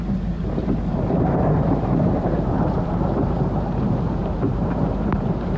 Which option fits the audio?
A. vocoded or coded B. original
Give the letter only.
A